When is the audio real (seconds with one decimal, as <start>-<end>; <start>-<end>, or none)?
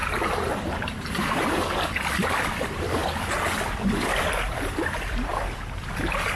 0.0-0.5; 3.0-3.8; 5.3-5.8